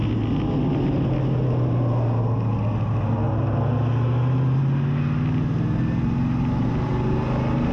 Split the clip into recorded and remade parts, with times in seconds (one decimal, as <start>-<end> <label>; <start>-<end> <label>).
0.0-7.7 recorded